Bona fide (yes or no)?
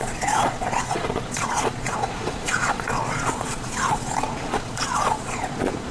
no